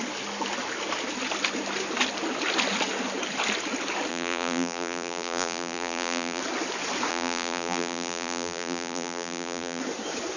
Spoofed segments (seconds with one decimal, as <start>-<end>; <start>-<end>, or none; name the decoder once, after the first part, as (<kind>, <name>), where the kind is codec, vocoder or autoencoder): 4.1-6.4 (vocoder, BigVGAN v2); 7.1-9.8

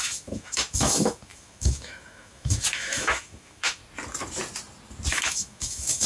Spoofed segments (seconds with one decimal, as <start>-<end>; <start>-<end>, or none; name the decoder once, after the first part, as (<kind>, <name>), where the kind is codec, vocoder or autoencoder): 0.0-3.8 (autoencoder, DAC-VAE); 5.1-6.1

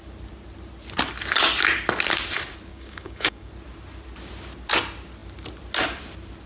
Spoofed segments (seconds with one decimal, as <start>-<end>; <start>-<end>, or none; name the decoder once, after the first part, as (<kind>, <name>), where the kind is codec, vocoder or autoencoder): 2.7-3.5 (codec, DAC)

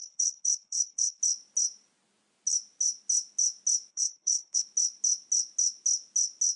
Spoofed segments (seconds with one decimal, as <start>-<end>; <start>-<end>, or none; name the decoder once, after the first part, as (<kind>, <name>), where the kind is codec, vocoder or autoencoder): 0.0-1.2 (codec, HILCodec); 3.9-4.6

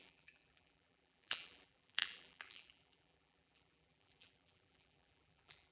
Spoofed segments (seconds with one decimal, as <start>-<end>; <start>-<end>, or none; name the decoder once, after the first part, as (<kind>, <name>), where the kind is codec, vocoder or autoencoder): 0.0-5.7 (vocoder, BigVGAN v2)

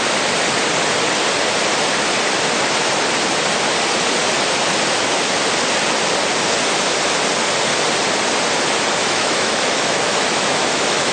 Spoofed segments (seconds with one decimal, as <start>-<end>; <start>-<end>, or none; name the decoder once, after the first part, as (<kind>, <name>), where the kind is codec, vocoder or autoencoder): 9.0-11.1 (autoencoder, DAC-VAE)

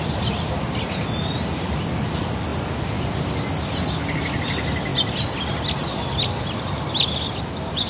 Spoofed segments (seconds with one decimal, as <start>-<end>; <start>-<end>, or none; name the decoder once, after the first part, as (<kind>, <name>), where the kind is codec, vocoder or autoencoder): none